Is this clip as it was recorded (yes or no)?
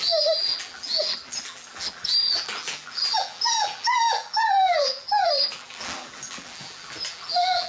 no